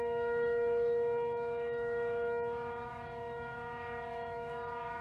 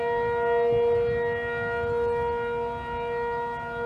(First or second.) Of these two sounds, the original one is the second